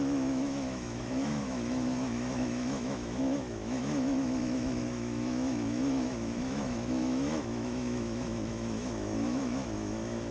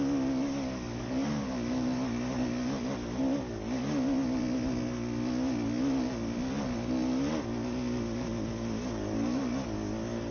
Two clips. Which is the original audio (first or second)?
second